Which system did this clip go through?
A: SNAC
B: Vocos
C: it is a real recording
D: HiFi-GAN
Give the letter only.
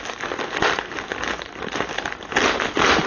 C